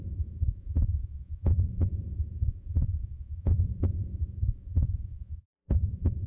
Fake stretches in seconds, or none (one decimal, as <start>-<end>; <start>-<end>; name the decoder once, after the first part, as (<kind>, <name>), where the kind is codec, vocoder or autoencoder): 0.0-6.3 (vocoder, Vocos)